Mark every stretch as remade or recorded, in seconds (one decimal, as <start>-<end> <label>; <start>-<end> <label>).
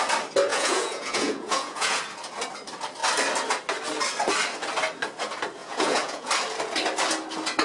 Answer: 0.0-0.5 recorded; 0.5-2.0 remade; 2.0-5.6 recorded; 5.6-6.3 remade; 6.3-7.6 recorded